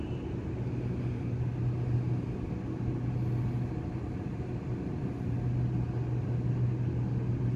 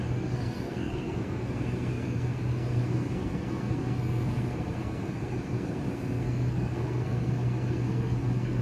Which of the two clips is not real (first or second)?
second